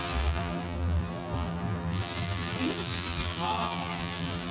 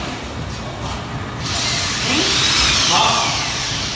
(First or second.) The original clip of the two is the second